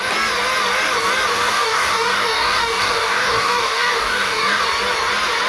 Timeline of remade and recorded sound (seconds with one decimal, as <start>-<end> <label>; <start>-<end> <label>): 0.0-1.3 recorded; 1.3-4.6 remade; 4.6-5.5 recorded